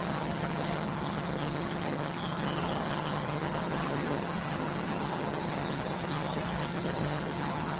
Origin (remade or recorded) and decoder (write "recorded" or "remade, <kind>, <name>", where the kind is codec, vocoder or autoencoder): remade, vocoder, HiFi-GAN